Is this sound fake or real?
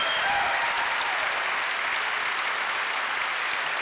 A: real